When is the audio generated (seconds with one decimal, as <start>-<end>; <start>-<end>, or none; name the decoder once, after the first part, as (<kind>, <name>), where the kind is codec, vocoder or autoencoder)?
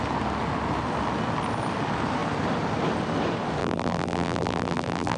3.6-5.2 (vocoder, BigVGAN v2)